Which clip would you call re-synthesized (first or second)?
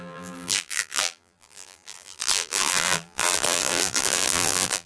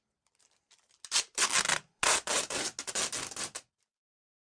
first